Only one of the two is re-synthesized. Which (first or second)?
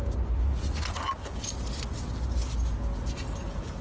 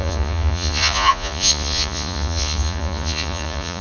second